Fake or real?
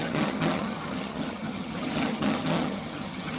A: fake